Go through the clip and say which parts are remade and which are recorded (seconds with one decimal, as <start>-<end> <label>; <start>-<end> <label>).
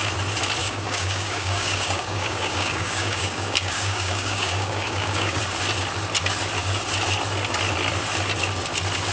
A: 0.0-0.6 recorded; 0.6-5.4 remade; 5.4-9.1 recorded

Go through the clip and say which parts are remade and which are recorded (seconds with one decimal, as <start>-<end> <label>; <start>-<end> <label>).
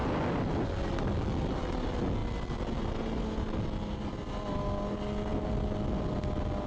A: 0.0-6.7 recorded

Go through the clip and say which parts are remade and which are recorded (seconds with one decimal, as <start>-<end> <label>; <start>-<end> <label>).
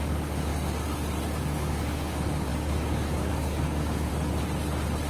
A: 0.0-0.5 remade; 0.5-1.4 recorded; 1.4-4.1 remade; 4.1-5.1 recorded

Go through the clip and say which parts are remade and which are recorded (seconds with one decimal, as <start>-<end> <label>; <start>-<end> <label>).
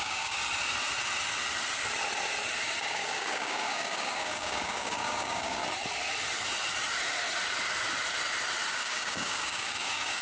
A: 0.0-0.4 remade; 0.4-2.8 recorded; 2.8-5.6 remade; 5.6-8.7 recorded; 8.7-10.2 remade